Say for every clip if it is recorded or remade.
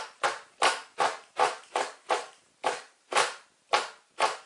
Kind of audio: remade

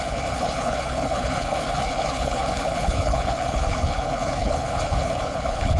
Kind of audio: remade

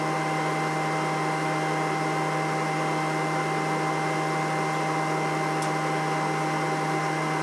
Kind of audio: recorded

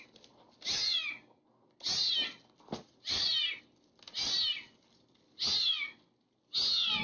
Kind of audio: recorded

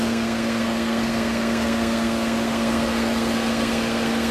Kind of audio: remade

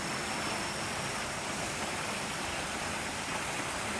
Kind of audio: recorded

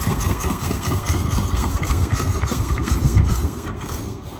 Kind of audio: remade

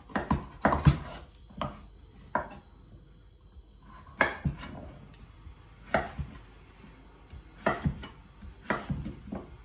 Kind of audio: recorded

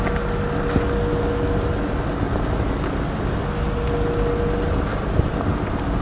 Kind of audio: recorded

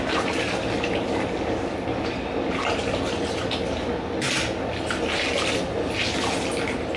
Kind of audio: recorded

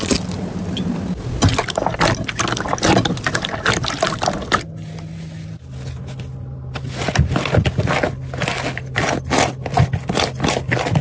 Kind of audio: recorded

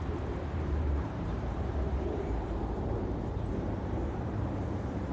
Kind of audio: remade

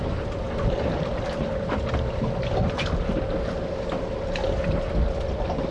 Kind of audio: recorded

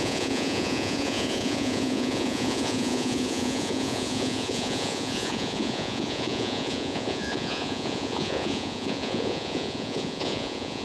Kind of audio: remade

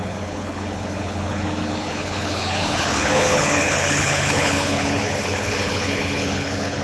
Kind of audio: remade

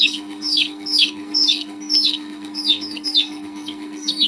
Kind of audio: remade